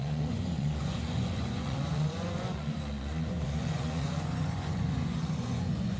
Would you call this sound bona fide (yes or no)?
no